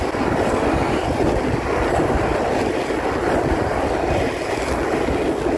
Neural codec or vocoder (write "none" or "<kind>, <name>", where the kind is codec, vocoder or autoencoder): none